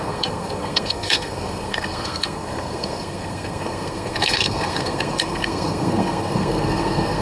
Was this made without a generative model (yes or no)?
no